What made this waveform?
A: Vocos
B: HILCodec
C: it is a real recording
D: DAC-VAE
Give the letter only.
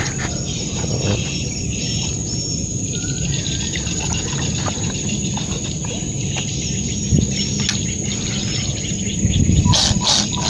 C